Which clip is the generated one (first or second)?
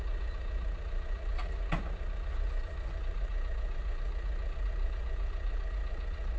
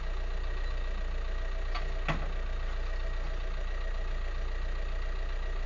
first